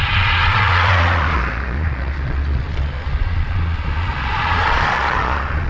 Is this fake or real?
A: fake